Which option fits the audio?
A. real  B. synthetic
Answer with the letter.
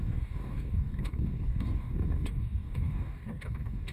B